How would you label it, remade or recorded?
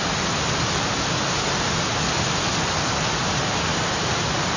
recorded